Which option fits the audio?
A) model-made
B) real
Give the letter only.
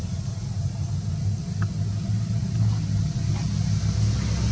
B